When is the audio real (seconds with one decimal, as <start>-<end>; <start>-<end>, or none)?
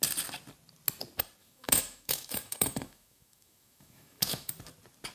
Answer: 0.0-1.4; 4.5-5.1